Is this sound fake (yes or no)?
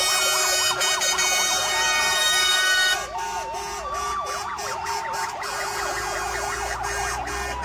yes